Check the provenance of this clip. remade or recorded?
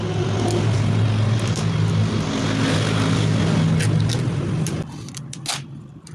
recorded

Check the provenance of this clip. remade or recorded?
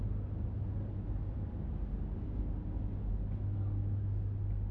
recorded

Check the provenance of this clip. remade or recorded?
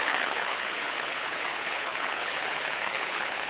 remade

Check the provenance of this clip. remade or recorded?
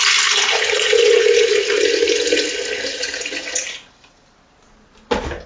recorded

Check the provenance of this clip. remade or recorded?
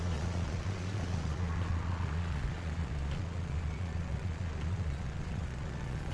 remade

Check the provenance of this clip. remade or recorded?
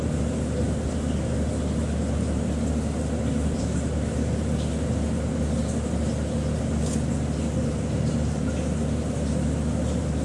recorded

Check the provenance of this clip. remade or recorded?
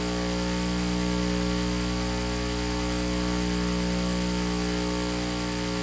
recorded